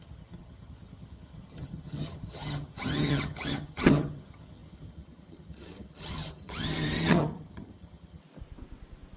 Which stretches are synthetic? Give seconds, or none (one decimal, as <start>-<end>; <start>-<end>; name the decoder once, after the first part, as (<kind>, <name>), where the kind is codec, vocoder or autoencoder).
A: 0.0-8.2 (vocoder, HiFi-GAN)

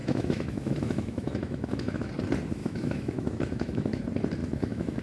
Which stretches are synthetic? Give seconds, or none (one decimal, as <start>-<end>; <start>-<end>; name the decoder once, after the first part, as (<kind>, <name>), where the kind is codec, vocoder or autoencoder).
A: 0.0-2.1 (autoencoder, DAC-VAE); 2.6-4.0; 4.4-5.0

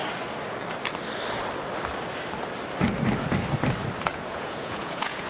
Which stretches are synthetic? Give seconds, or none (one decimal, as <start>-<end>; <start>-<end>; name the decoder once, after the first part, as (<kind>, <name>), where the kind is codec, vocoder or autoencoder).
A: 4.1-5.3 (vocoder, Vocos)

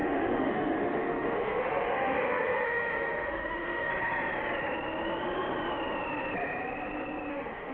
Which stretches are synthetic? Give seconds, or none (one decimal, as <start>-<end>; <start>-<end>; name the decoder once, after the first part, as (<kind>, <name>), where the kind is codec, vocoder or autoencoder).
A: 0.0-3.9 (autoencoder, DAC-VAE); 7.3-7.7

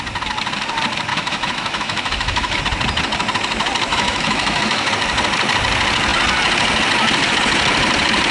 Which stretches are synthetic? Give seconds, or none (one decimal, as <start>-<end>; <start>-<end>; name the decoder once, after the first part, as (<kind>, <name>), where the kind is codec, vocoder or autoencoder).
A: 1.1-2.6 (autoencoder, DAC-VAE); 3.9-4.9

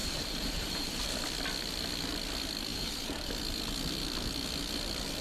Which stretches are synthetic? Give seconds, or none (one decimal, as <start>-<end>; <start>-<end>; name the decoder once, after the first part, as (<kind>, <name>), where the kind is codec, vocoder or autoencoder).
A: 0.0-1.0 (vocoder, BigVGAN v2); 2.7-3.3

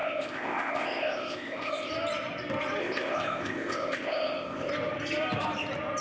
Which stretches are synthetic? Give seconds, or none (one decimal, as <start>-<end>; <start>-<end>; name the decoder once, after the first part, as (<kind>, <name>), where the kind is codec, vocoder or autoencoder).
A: 0.0-1.9 (codec, ZipCodec); 2.8-4.7

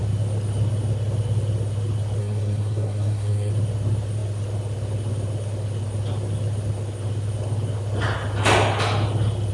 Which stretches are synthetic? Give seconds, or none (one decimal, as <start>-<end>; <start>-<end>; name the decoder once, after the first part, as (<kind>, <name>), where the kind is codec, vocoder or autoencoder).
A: 2.2-3.5 (codec, SNAC)